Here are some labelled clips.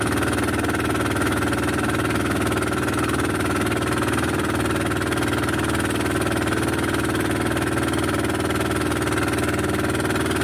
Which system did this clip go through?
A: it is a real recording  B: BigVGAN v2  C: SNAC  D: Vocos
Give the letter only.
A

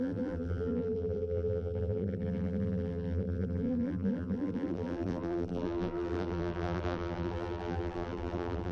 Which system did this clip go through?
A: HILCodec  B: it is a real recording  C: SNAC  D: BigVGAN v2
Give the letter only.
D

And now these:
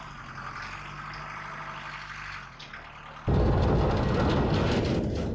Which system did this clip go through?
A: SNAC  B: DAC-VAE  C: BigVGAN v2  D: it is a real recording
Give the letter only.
D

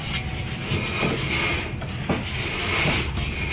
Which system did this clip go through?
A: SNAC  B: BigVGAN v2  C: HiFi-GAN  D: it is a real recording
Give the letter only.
D